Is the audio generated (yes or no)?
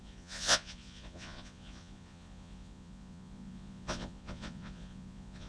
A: yes